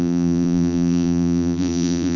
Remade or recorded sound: remade